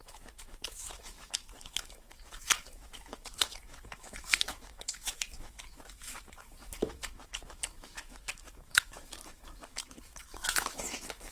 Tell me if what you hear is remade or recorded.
remade